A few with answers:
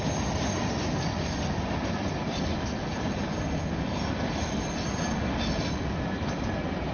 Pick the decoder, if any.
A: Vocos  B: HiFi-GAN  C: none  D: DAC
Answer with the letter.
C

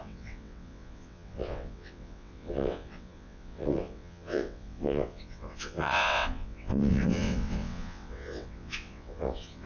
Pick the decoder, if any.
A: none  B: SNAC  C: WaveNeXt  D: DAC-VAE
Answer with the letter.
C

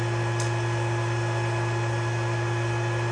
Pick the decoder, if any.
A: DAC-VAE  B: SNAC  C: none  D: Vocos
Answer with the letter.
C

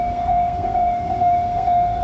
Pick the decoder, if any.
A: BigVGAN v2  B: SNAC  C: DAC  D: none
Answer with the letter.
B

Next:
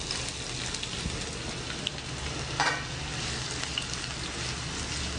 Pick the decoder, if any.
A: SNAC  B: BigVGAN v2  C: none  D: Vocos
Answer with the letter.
C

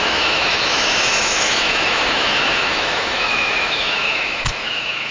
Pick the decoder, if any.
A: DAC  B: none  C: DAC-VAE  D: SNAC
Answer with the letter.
C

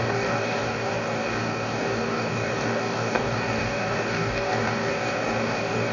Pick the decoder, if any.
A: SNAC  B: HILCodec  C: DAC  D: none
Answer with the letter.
C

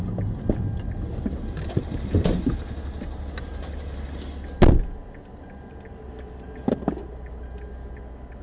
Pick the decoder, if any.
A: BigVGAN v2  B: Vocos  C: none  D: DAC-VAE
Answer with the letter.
C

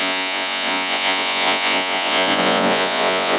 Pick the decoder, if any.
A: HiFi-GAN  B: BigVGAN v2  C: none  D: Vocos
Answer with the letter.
D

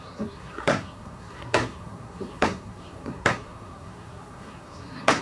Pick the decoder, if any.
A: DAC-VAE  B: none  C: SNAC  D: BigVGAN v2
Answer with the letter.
C